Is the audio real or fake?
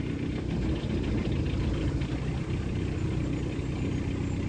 real